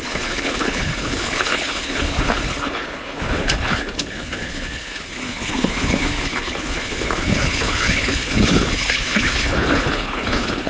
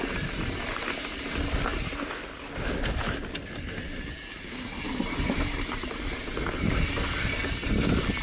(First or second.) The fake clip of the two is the first